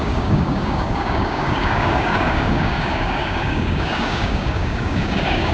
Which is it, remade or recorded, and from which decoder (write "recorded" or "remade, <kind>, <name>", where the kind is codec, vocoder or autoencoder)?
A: remade, codec, DAC